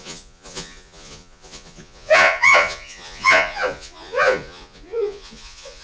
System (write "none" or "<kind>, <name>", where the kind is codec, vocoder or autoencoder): vocoder, Vocos